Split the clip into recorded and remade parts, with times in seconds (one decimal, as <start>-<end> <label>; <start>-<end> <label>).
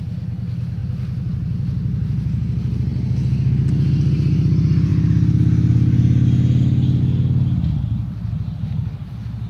0.0-9.5 recorded